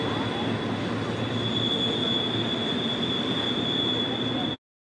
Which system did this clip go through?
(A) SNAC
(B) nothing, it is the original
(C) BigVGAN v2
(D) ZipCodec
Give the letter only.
B